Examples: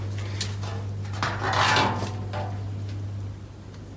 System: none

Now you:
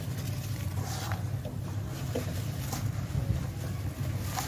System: none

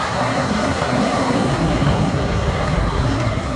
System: codec, SNAC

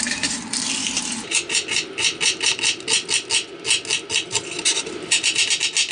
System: none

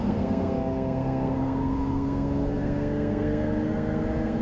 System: codec, SNAC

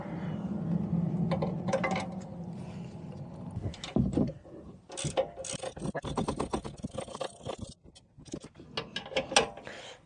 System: none